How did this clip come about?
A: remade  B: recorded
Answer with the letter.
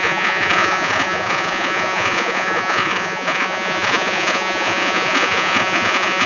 A